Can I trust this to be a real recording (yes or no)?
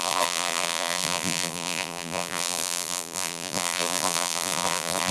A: no